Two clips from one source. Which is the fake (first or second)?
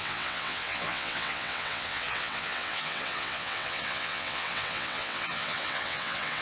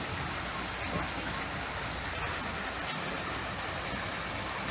first